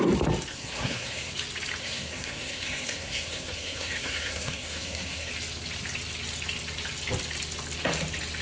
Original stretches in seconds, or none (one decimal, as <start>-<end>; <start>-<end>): 0.0-0.5; 1.3-1.8; 5.3-8.4